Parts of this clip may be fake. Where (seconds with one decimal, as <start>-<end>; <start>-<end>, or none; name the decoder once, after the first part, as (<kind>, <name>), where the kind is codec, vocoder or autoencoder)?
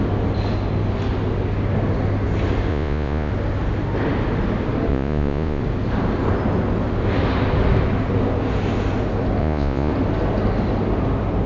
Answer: 2.7-3.3 (vocoder, Vocos); 4.9-5.6; 9.4-9.9